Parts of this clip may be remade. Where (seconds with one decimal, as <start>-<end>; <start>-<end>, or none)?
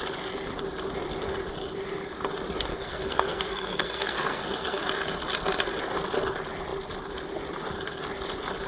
2.7-4.8